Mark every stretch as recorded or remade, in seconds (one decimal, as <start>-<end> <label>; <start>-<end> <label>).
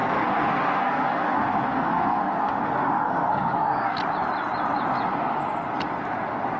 0.0-4.0 remade; 4.0-6.6 recorded